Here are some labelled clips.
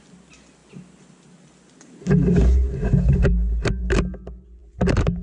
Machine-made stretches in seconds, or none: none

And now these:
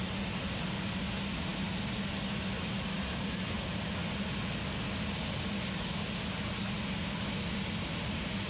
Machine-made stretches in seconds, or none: none

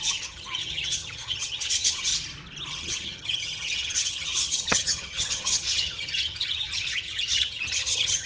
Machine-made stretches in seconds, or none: 0.0-2.1 (vocoder, HiFi-GAN); 2.7-8.3

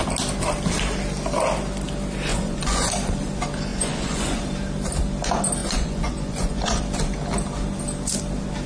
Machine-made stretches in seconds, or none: 2.3-2.9 (vocoder, Vocos); 3.7-4.4; 5.6-6.8

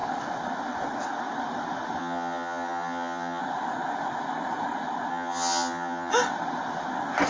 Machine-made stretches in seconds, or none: 2.0-3.4 (vocoder, HiFi-GAN); 5.1-6.1

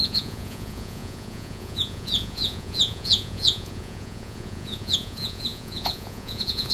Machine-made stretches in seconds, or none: 0.0-6.7 (vocoder, Vocos)

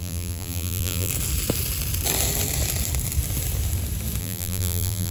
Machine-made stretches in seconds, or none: 0.0-1.1 (vocoder, BigVGAN v2); 4.2-5.1

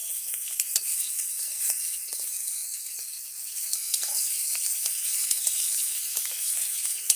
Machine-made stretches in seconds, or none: 0.0-7.2 (codec, SNAC)